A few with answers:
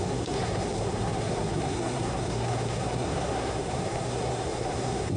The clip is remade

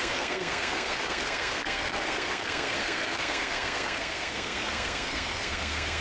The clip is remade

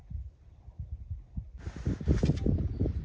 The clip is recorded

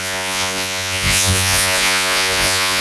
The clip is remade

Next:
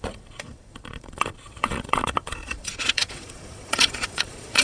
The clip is remade